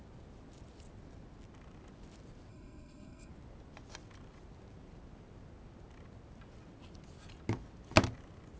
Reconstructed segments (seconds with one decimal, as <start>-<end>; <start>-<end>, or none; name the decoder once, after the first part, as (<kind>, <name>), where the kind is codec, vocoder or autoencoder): 2.5-3.3 (codec, SNAC)